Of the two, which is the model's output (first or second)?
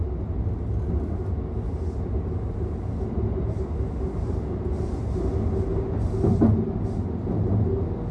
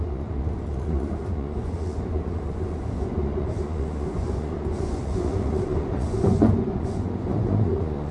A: second